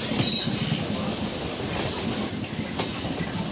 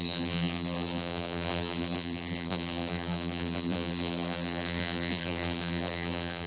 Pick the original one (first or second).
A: first